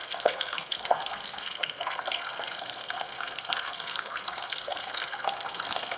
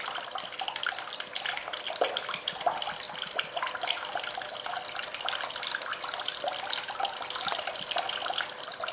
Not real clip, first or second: first